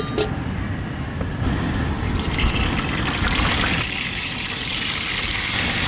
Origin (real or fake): real